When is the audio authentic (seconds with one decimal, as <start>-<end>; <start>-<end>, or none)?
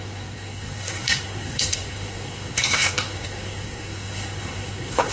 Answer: none